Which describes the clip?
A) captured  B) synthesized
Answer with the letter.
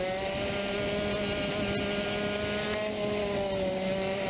A